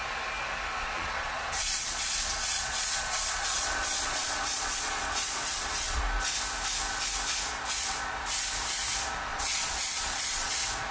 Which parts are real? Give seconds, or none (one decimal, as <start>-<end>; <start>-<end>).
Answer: 0.0-0.8; 6.0-9.3; 10.5-10.9